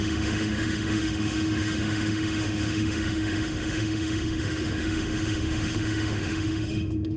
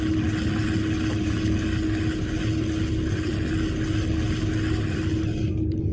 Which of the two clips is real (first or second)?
second